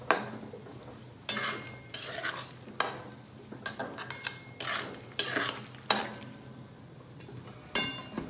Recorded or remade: recorded